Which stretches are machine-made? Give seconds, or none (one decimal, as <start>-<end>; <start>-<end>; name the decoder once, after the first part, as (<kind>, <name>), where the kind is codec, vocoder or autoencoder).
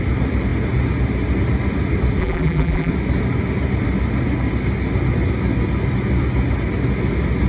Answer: 2.2-2.9 (vocoder, BigVGAN v2)